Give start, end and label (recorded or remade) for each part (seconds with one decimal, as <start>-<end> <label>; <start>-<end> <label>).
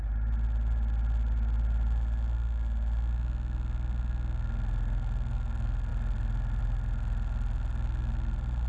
0.0-8.7 recorded